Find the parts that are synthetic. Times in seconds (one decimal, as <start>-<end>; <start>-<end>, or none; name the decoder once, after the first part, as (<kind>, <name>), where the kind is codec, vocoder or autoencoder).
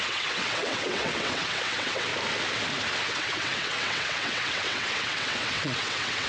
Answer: 0.0-2.1 (vocoder, WaveNeXt); 3.0-6.3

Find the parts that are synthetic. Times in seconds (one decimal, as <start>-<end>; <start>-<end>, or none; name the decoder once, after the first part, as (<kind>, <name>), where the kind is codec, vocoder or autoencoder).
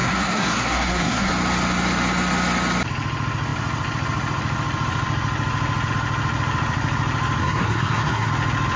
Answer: 0.0-1.3 (codec, SNAC); 7.4-8.3